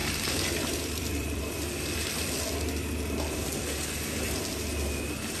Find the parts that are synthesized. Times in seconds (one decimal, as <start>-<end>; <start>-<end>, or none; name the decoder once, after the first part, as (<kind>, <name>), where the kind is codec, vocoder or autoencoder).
0.0-1.4 (vocoder, BigVGAN v2)

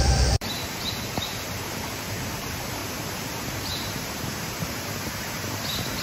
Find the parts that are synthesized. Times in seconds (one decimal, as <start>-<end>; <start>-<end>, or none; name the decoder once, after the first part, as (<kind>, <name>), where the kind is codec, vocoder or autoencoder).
0.0-6.0 (vocoder, BigVGAN v2)